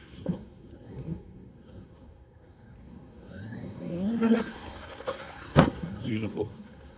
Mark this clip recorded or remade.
remade